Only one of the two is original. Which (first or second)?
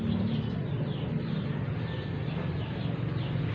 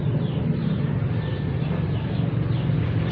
first